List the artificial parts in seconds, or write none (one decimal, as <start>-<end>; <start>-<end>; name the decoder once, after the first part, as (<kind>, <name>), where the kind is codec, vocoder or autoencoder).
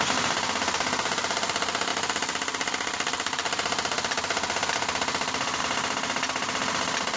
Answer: none